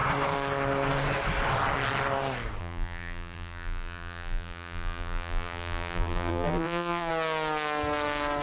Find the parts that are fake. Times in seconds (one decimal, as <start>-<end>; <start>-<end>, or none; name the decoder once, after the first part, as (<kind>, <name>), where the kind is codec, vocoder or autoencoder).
2.6-7.1 (vocoder, BigVGAN v2)